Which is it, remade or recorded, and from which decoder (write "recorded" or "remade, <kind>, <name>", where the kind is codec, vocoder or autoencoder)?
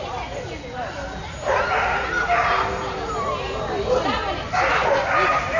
recorded